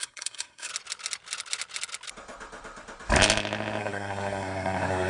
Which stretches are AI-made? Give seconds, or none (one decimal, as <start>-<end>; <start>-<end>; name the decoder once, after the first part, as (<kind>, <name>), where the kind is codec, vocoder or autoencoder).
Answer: 0.0-0.7 (codec, SNAC); 3.8-5.1